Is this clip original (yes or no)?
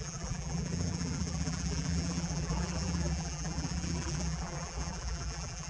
no